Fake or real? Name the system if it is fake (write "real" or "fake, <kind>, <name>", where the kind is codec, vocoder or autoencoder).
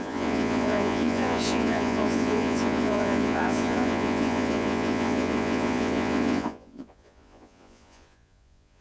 fake, vocoder, Vocos